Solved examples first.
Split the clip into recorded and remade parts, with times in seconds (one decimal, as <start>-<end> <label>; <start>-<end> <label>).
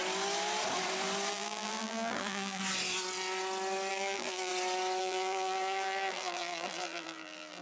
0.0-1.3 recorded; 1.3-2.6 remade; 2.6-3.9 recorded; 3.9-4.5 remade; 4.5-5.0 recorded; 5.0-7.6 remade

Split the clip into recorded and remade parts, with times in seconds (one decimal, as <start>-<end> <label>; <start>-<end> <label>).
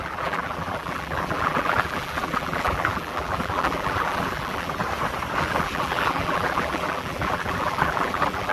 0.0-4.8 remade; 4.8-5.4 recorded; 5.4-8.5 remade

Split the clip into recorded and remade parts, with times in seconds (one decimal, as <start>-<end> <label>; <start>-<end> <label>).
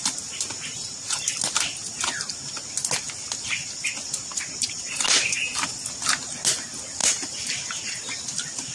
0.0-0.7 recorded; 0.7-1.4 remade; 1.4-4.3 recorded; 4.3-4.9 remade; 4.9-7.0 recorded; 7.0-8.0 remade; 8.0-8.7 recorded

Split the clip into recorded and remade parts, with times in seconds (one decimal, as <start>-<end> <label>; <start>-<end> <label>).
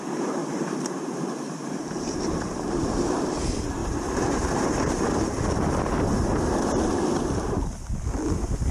0.0-0.4 recorded; 0.4-3.3 remade; 3.3-3.8 recorded; 3.8-7.4 remade; 7.4-8.7 recorded